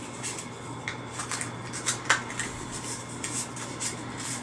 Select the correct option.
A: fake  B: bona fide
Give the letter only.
B